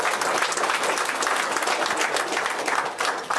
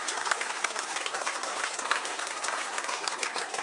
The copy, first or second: second